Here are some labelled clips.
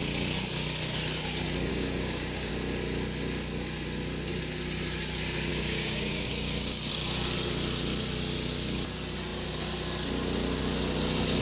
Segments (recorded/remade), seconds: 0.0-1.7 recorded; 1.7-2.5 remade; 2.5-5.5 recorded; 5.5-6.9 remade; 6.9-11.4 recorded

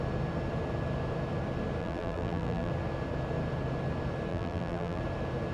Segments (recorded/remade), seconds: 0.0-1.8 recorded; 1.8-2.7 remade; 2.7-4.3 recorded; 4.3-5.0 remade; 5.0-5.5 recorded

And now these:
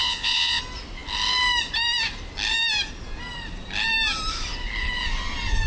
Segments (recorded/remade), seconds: 0.0-0.6 remade; 0.6-5.7 recorded

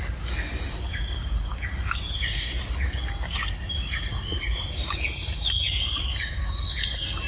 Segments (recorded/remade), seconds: 0.0-4.3 recorded; 4.3-6.3 remade; 6.3-7.3 recorded

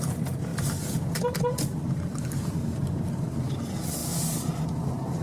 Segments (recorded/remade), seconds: 0.0-5.2 recorded

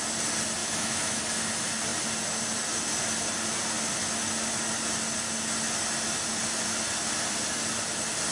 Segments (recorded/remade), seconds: 0.0-0.6 recorded; 0.6-1.2 remade; 1.2-8.3 recorded